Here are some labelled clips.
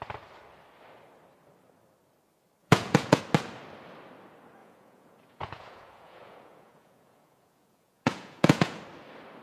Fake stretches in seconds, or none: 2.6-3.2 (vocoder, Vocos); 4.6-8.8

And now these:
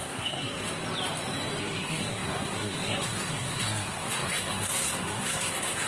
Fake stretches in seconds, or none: 0.0-0.6 (codec, SNAC); 1.6-5.9